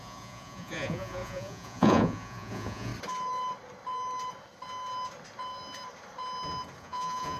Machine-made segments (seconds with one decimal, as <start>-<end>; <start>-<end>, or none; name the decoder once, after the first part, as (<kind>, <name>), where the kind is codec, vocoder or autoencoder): 0.0-2.9 (vocoder, Vocos); 6.8-7.4

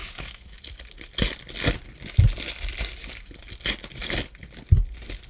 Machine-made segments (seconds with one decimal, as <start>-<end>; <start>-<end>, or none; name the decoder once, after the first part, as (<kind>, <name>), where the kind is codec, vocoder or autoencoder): 0.0-0.6 (autoencoder, DAC-VAE)

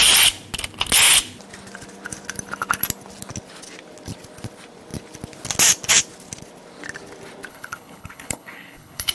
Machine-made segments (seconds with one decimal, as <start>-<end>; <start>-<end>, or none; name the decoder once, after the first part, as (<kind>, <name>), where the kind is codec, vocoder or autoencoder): 7.5-9.1 (codec, HILCodec)

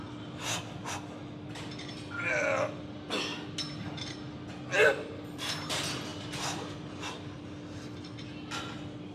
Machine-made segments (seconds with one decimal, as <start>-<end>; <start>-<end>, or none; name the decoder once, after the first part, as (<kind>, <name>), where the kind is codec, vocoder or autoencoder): none